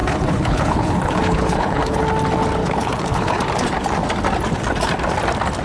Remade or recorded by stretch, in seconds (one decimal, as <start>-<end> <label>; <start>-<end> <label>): 0.0-2.0 remade; 2.0-2.6 recorded; 2.6-3.4 remade; 3.4-5.6 recorded